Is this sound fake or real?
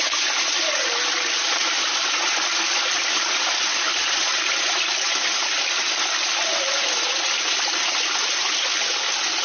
real